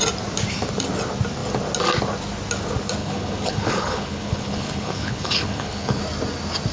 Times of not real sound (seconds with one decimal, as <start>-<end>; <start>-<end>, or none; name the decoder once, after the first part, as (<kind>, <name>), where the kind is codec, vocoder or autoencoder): 3.0-6.0 (codec, HILCodec)